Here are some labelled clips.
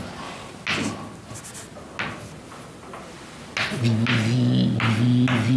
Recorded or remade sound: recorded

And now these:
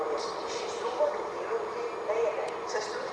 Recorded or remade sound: recorded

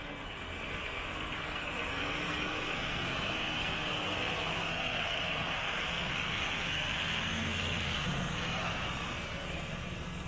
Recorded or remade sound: remade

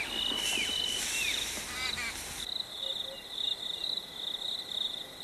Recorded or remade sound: recorded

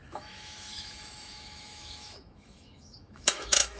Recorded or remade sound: remade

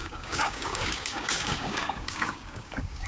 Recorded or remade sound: remade